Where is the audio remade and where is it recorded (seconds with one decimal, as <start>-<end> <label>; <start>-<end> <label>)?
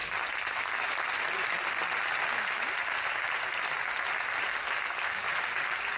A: 0.0-6.0 recorded